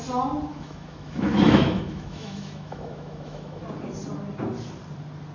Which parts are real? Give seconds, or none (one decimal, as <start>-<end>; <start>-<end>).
0.0-0.5; 3.6-5.3